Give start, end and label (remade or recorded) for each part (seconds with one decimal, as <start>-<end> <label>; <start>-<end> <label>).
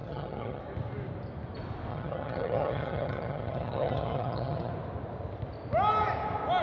0.0-0.6 remade; 0.6-1.9 recorded; 1.9-4.7 remade; 4.7-6.6 recorded